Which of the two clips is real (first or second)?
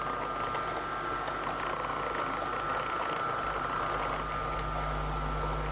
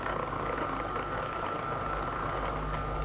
first